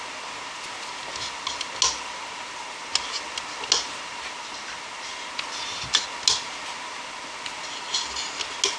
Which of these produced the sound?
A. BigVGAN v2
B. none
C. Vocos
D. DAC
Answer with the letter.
B